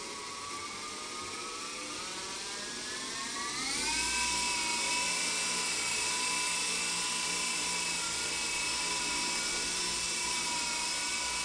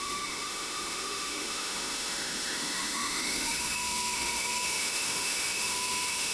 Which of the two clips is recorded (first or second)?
first